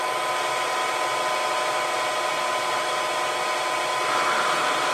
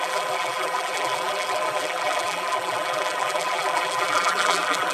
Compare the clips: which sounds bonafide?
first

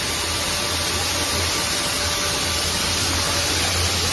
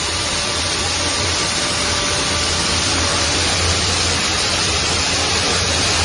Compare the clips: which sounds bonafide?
first